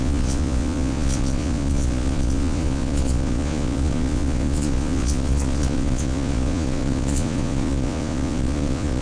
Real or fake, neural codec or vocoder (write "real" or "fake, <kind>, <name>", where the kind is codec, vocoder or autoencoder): fake, vocoder, Vocos